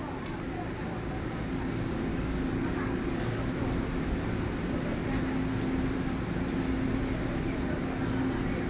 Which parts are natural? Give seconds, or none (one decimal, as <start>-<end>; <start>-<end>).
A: 0.0-2.1; 3.5-8.7